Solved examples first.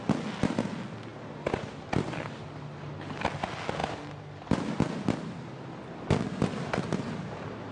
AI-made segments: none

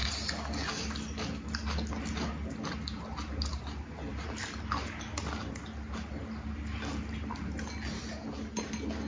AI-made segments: none

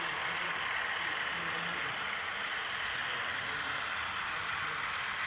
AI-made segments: none

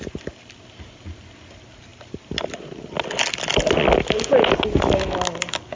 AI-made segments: none

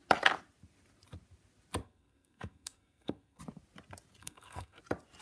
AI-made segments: 1.8-3.4 (codec, SNAC); 4.2-4.8

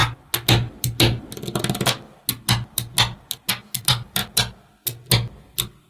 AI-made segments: 3.5-4.2 (vocoder, BigVGAN v2)